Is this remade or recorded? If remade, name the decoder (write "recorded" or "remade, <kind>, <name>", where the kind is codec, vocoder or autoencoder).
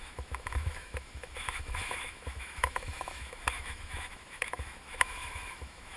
remade, autoencoder, DAC-VAE